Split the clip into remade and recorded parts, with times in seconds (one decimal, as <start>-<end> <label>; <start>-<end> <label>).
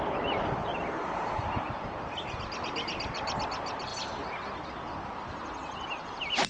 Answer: 0.0-0.7 recorded; 0.7-3.4 remade; 3.4-6.5 recorded